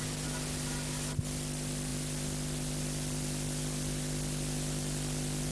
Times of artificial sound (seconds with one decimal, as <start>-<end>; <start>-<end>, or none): none